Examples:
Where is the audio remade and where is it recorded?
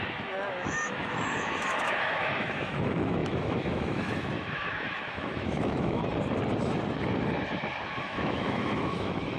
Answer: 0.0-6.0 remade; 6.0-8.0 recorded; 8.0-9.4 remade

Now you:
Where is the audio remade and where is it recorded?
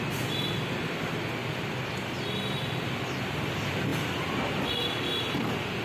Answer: 0.0-5.8 recorded